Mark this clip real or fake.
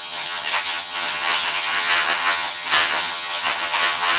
fake